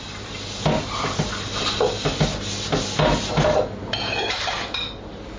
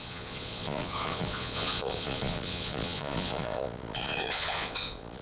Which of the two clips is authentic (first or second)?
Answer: first